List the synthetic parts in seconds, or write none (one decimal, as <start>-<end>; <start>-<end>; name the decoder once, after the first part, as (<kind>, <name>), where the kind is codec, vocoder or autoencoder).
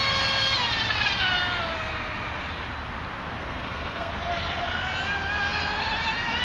3.4-4.1 (codec, SNAC)